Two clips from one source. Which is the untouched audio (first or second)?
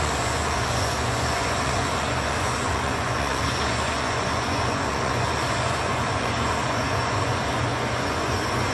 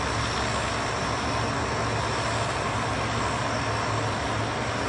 second